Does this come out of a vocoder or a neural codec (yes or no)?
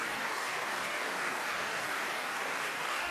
yes